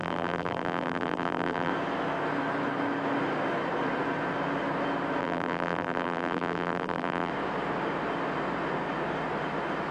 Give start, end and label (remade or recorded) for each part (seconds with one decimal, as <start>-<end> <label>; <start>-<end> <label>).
0.0-1.7 remade; 1.7-5.2 recorded; 5.2-7.3 remade; 7.3-9.9 recorded